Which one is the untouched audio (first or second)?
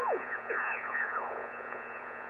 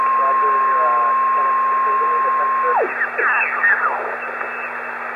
second